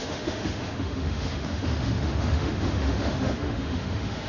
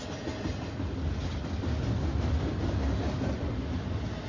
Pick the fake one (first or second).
first